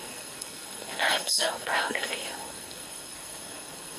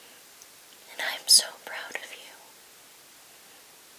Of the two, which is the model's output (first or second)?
first